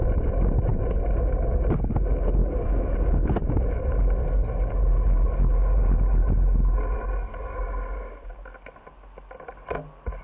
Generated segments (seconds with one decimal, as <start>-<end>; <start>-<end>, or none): 2.4-3.6